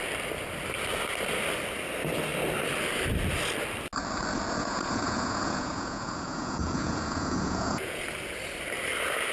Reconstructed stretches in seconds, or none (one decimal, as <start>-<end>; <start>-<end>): 4.6-8.0